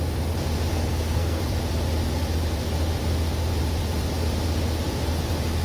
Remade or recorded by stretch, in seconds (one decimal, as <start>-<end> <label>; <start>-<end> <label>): 0.0-0.7 recorded; 0.7-1.4 remade; 1.4-5.6 recorded

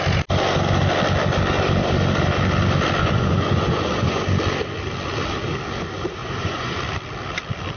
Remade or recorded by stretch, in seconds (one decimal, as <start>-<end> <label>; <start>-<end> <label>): 0.0-3.0 recorded; 3.0-4.2 remade; 4.2-6.2 recorded; 6.2-6.8 remade; 6.8-7.8 recorded

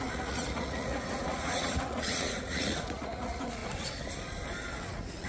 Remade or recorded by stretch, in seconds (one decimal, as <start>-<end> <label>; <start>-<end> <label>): 0.0-3.6 remade; 3.6-4.7 recorded; 4.7-5.3 remade

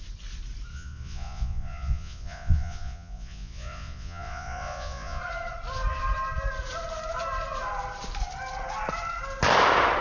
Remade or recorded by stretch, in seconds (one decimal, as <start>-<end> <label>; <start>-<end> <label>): 0.0-0.7 recorded; 0.7-5.2 remade; 5.2-10.0 recorded

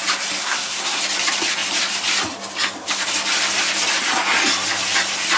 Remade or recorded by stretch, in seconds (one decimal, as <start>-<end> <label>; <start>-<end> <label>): 0.0-0.4 recorded; 0.4-1.0 remade; 1.0-5.4 recorded

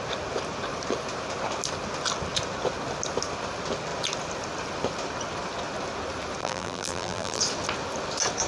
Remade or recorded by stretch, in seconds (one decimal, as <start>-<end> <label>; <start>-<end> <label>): 0.0-6.4 recorded; 6.4-7.4 remade; 7.4-8.5 recorded

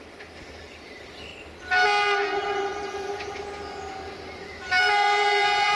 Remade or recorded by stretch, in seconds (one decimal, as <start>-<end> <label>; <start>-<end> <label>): 0.0-1.3 remade; 1.3-4.8 recorded; 4.8-5.8 remade

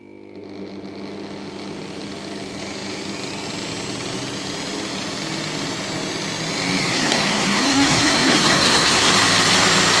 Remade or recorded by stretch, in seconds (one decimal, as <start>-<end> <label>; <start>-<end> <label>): 0.0-6.8 recorded; 6.8-9.1 remade; 9.1-10.0 recorded